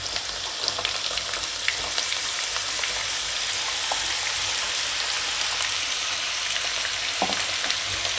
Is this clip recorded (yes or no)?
yes